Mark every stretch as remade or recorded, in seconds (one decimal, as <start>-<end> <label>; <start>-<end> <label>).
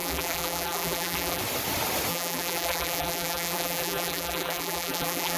0.0-1.4 remade; 1.4-2.1 recorded; 2.1-5.4 remade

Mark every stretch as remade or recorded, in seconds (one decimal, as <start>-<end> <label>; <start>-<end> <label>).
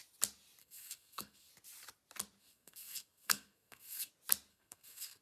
0.0-0.6 recorded; 0.6-1.5 remade; 1.5-2.4 recorded; 2.4-4.1 remade; 4.1-4.5 recorded; 4.5-5.2 remade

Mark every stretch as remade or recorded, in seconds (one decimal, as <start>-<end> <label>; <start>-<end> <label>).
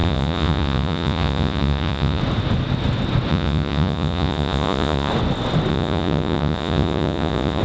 0.0-2.2 remade; 2.2-3.3 recorded; 3.3-5.1 remade; 5.1-5.7 recorded; 5.7-7.6 remade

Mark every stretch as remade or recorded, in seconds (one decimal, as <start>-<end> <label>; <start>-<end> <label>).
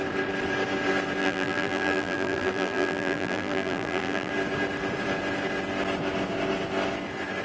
0.0-1.2 recorded; 1.2-4.3 remade; 4.3-7.4 recorded